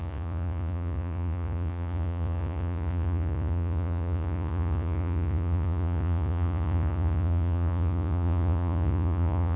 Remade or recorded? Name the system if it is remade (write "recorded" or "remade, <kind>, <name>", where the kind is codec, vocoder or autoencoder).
remade, vocoder, Vocos